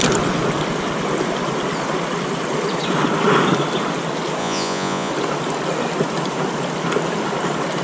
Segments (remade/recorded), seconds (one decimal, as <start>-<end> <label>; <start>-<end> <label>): 0.0-4.4 recorded; 4.4-5.1 remade; 5.1-7.8 recorded